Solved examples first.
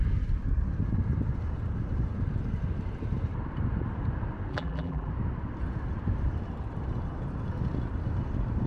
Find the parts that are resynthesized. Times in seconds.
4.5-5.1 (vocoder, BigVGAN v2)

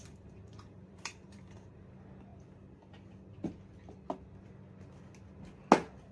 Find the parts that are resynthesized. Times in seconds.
0.0-1.9 (vocoder, BigVGAN v2)

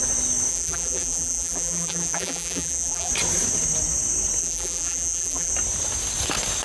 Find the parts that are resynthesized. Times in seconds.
0.5-3.1 (vocoder, BigVGAN v2); 4.4-5.5

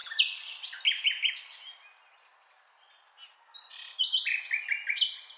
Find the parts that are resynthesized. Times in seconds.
0.0-1.3 (vocoder, BigVGAN v2)